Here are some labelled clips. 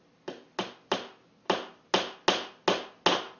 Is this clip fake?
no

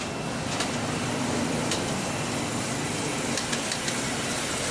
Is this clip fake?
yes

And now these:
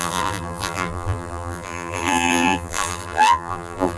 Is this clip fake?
yes